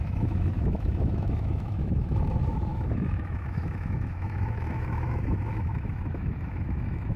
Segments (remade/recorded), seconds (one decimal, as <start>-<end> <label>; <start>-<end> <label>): 0.0-7.2 remade